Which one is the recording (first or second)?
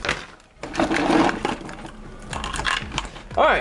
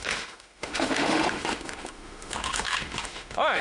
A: first